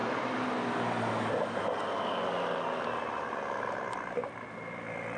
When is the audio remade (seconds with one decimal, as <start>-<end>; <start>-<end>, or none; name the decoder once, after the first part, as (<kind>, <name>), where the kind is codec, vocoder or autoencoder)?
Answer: none